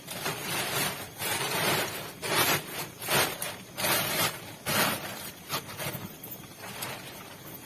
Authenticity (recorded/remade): remade